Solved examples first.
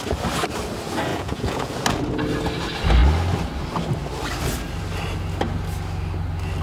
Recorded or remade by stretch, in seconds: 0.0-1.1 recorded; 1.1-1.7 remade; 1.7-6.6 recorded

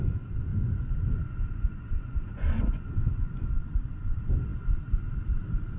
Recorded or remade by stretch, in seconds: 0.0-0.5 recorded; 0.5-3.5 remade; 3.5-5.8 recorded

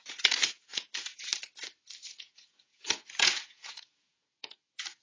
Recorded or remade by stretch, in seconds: 0.0-1.3 remade; 1.3-2.1 recorded; 2.1-5.0 remade